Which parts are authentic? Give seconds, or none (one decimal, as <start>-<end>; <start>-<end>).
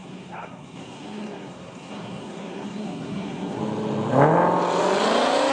3.6-5.5